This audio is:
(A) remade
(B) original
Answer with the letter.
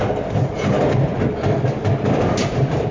B